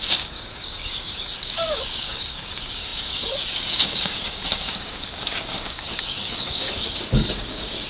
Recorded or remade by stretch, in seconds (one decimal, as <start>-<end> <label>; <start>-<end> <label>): 0.0-7.9 remade